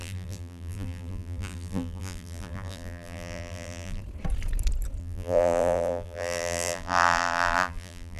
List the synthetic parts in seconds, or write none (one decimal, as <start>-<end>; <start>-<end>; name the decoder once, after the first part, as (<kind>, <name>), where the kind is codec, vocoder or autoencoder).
0.0-4.0 (vocoder, BigVGAN v2); 5.0-8.2